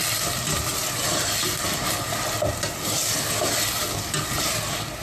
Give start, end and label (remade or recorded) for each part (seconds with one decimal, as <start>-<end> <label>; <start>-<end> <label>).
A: 0.0-5.0 recorded